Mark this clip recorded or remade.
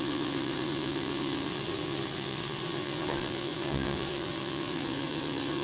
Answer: remade